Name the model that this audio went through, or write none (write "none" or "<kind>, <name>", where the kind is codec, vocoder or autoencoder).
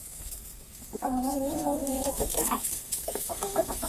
codec, SNAC